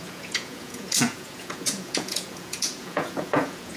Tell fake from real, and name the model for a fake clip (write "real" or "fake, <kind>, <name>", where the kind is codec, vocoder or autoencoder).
fake, vocoder, Vocos